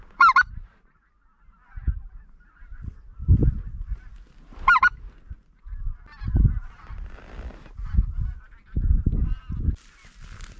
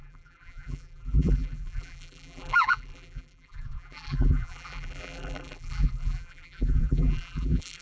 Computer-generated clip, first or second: second